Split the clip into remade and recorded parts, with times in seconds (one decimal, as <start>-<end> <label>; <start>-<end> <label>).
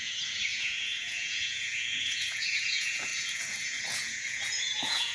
0.0-5.1 remade